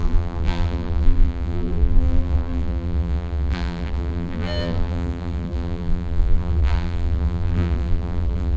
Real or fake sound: fake